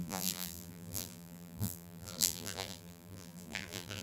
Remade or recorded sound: remade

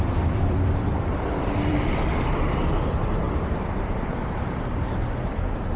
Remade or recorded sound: remade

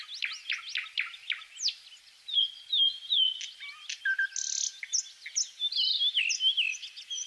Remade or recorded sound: recorded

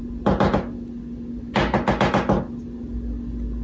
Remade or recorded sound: recorded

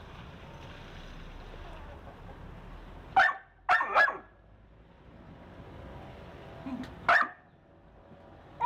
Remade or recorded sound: recorded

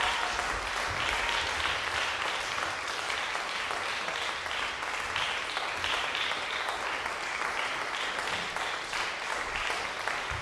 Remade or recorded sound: recorded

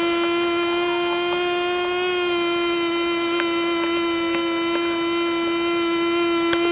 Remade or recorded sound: recorded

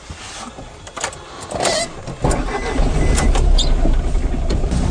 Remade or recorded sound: recorded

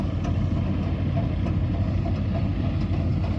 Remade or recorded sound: recorded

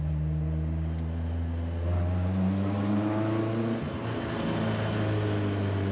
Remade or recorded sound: recorded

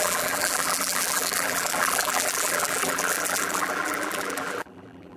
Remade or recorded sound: remade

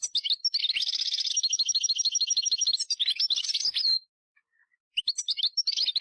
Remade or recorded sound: recorded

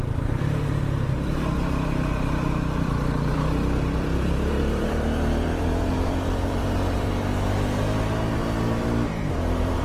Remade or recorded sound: remade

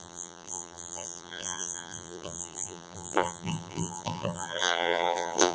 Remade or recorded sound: remade